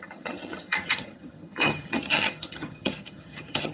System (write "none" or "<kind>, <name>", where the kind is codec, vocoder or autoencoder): vocoder, HiFi-GAN